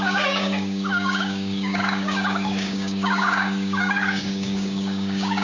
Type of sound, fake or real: fake